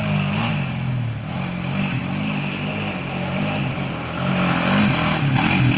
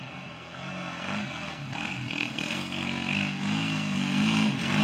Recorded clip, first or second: first